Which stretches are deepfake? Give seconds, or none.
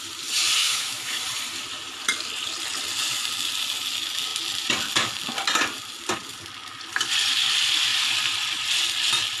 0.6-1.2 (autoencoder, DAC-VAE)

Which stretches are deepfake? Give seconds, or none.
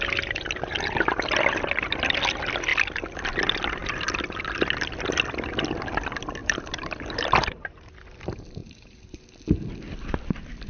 6.4-7.9 (vocoder, BigVGAN v2); 8.6-9.2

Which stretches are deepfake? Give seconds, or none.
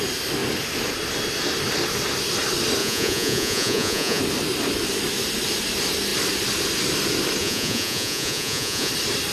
2.8-4.2 (vocoder, Vocos); 7.4-8.9